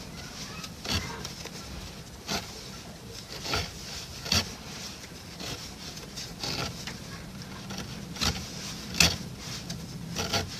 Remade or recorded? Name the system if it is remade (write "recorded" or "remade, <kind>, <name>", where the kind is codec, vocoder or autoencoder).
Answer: recorded